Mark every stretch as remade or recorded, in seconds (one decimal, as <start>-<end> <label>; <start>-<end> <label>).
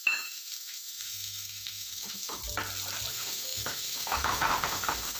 0.0-2.4 remade; 2.4-3.1 recorded; 3.1-5.2 remade